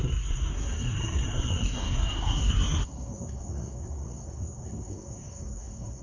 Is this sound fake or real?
fake